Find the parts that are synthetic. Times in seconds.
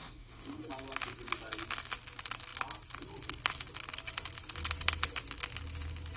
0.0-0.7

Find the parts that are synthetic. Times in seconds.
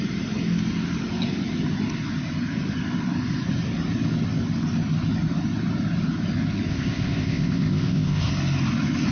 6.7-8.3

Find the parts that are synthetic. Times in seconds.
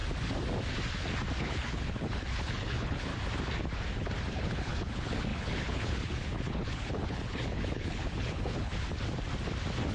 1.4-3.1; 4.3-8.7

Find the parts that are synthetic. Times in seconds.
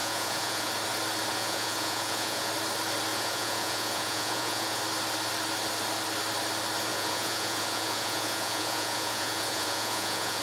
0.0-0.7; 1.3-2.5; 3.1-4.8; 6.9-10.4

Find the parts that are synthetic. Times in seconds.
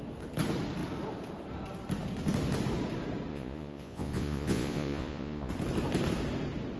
3.3-5.5